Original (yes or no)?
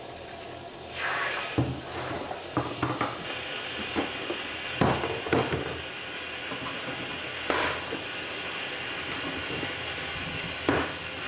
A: yes